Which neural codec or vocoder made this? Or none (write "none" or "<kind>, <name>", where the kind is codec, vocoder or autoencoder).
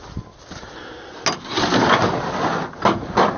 none